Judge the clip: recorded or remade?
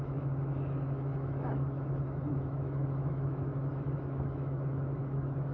remade